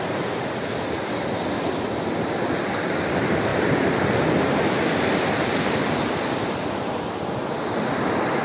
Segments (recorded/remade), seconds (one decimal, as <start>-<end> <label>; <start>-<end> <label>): 0.0-8.4 recorded